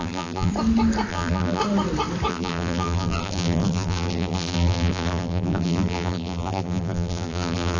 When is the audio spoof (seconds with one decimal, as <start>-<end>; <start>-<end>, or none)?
0.0-0.5; 1.1-1.6; 2.3-7.8